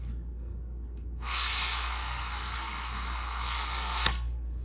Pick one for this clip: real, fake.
fake